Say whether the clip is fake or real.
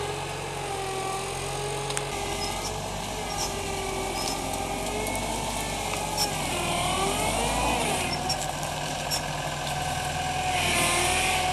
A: real